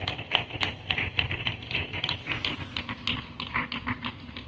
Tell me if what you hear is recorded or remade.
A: recorded